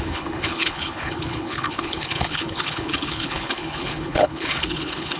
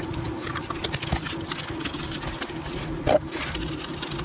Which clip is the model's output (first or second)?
first